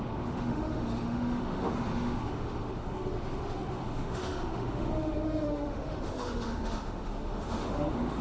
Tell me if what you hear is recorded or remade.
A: remade